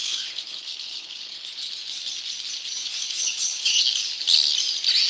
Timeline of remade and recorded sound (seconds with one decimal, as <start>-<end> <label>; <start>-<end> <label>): 0.0-1.7 remade; 1.7-2.8 recorded; 2.8-3.8 remade; 3.8-5.1 recorded